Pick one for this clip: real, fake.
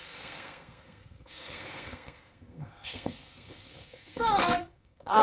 fake